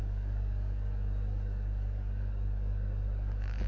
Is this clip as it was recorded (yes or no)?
no